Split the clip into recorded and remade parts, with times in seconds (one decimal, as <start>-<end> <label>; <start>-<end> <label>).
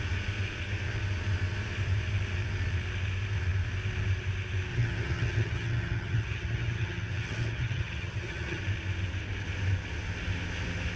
0.0-4.7 recorded; 4.7-8.6 remade; 8.6-11.0 recorded